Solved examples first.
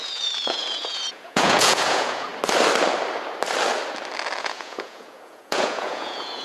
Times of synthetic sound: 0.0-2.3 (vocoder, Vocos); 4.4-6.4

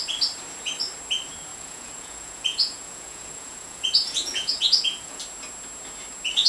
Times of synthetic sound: 1.5-5.2 (vocoder, Vocos)

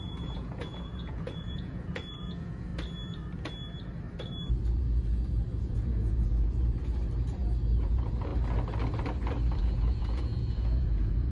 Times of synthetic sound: 0.0-2.7 (vocoder, Vocos); 5.5-6.8; 7.8-8.3; 9.6-11.3

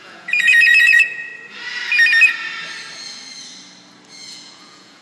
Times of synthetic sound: 0.0-1.3 (vocoder, Vocos); 4.3-5.0

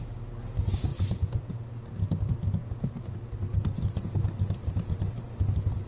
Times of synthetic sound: none

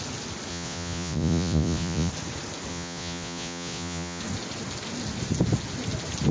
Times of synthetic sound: 0.5-2.1 (vocoder, Vocos); 2.7-4.2